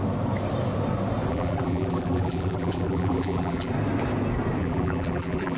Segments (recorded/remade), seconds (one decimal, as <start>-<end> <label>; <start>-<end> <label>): 0.0-1.3 recorded; 1.3-3.7 remade; 3.7-4.6 recorded; 4.6-5.6 remade